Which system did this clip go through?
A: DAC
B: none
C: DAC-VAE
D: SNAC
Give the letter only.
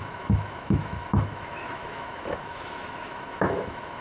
C